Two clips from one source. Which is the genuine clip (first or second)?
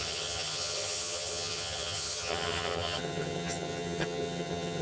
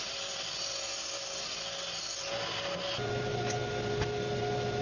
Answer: second